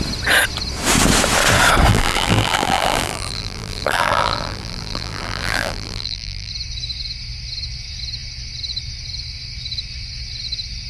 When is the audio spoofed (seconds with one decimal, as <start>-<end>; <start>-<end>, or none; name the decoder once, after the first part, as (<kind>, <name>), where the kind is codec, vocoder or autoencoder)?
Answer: 1.9-6.5 (vocoder, BigVGAN v2)